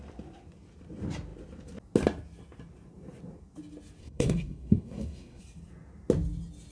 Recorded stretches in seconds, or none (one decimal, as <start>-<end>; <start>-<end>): 0.0-4.0; 5.4-6.7